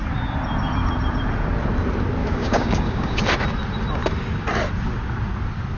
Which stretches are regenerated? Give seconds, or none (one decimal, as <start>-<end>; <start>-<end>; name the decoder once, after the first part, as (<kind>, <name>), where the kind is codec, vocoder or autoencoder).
2.2-3.2 (codec, DAC)

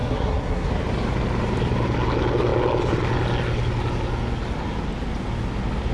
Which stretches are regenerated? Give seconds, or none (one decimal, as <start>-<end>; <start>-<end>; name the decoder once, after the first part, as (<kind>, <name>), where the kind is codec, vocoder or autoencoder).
0.0-0.7 (codec, SNAC)

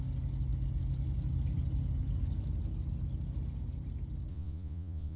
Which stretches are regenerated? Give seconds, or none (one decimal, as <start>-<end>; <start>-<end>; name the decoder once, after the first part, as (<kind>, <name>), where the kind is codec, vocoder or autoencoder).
4.3-5.2 (vocoder, Vocos)

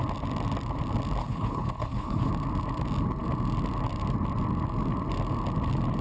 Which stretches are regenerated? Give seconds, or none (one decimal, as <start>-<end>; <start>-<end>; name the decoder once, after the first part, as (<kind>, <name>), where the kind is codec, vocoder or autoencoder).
1.2-2.3 (codec, HILCodec)

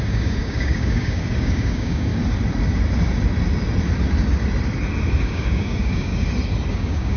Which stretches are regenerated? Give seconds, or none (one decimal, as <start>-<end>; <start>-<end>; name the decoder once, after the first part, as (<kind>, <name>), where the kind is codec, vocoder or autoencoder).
0.0-2.1 (codec, DAC); 5.2-6.1; 6.7-7.2